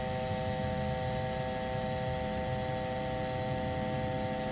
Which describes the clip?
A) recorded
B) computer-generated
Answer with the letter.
A